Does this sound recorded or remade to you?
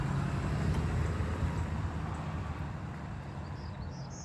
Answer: recorded